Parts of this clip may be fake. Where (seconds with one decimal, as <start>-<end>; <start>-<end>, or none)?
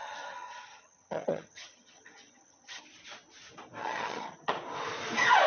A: 0.0-2.8; 3.8-4.5